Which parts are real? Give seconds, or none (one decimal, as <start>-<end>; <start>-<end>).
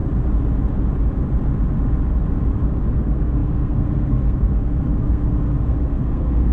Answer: 0.0-2.9